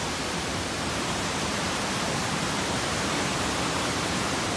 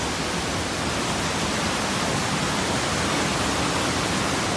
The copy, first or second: first